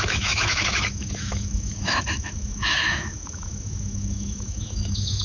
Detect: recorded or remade remade